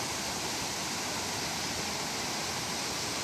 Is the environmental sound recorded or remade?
recorded